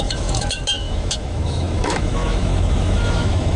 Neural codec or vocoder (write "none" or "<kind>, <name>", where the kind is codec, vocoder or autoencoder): autoencoder, DAC-VAE